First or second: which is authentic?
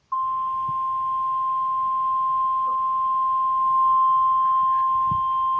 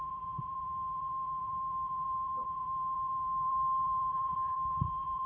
first